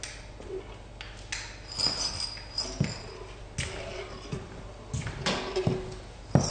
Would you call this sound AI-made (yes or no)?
no